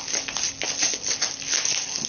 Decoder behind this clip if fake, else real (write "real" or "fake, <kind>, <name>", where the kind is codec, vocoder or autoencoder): real